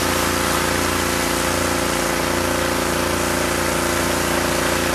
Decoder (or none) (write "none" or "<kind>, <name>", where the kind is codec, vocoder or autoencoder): none